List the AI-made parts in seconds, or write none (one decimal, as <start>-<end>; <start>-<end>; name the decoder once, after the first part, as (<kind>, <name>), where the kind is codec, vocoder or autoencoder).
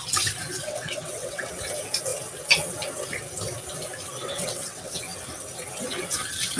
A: 0.6-1.5 (vocoder, WaveNeXt); 4.2-5.0